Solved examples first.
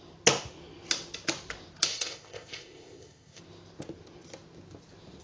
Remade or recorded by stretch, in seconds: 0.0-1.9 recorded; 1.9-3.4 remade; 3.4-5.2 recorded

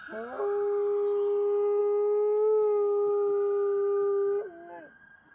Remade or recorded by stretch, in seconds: 0.0-5.3 recorded